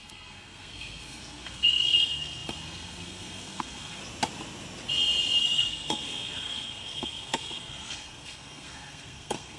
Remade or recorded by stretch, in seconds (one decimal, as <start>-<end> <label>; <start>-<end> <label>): 0.0-4.0 remade; 4.0-5.4 recorded; 5.4-9.6 remade